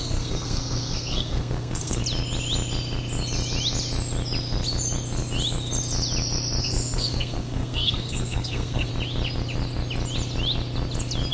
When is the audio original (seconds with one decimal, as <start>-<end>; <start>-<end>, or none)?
2.0-6.6; 8.9-11.3